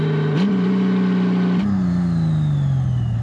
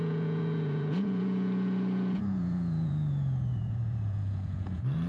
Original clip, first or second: first